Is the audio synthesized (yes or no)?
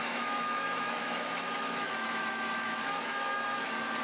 yes